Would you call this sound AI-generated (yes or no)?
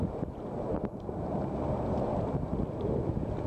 no